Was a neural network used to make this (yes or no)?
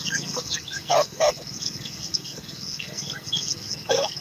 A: yes